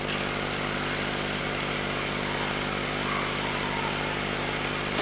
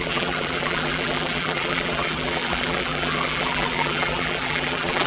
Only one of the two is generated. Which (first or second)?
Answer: second